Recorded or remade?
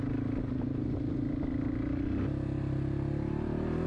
recorded